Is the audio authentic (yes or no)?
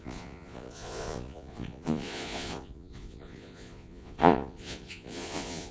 no